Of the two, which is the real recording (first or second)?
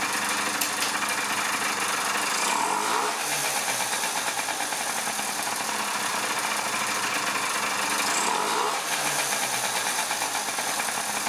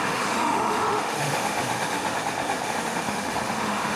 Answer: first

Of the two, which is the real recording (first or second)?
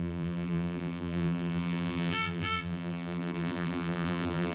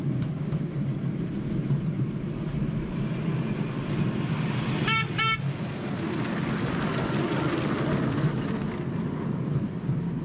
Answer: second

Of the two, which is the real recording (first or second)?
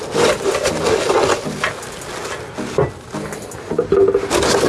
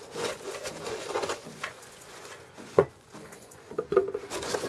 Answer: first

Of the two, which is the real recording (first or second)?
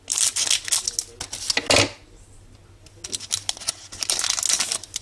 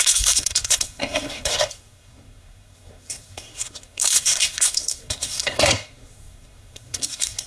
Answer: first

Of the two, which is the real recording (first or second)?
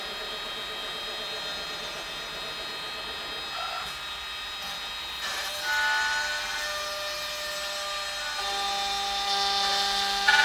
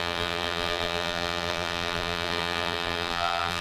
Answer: first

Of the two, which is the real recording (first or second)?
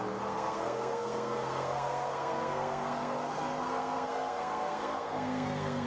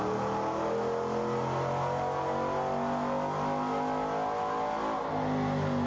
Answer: second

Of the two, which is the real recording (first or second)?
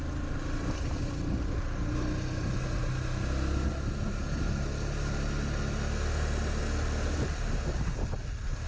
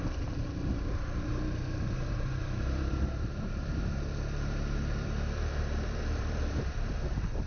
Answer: first